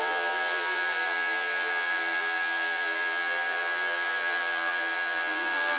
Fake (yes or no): yes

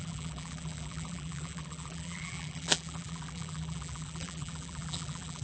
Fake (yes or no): yes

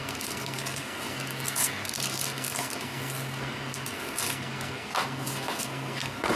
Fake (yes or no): yes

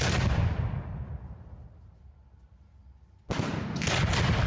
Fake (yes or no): no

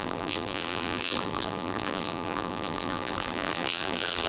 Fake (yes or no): yes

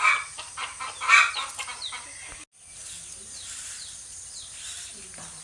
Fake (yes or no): no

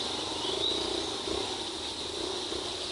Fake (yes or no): no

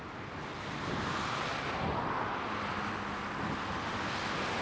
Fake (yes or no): no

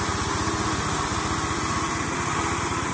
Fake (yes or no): no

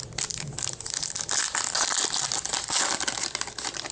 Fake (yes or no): no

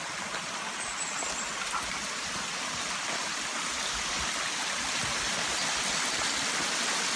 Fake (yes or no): no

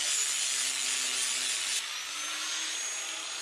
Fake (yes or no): no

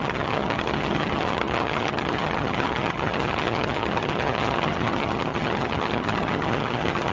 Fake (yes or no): yes